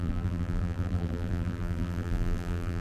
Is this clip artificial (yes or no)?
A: yes